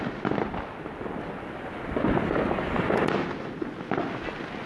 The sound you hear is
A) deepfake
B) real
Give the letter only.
B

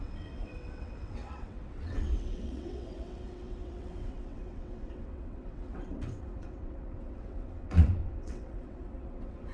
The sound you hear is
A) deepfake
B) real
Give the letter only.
A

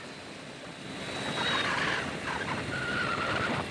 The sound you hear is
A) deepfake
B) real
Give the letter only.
B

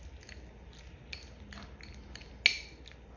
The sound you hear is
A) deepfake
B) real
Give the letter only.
B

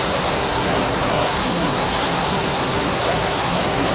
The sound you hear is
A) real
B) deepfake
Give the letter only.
B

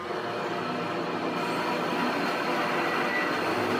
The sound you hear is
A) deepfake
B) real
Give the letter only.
B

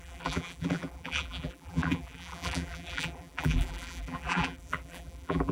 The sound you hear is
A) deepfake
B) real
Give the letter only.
A